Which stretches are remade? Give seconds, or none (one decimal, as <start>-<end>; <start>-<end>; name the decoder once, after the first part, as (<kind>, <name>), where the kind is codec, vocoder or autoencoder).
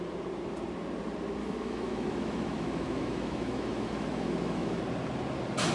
1.4-4.8 (autoencoder, DAC-VAE)